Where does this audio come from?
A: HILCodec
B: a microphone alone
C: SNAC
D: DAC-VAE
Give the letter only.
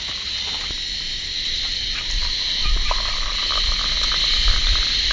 B